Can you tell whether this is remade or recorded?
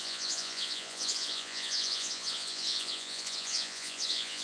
remade